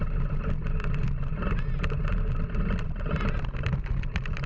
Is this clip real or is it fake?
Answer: real